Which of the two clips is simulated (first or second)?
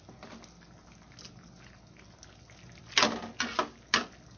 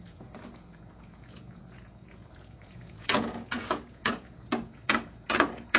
second